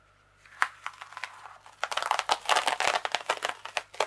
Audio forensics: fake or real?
real